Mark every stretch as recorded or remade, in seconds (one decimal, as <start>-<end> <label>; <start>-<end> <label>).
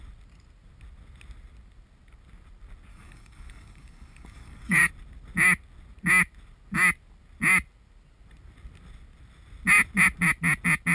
0.0-2.9 recorded; 2.9-4.9 remade; 4.9-10.9 recorded